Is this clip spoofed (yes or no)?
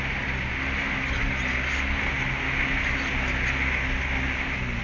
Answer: no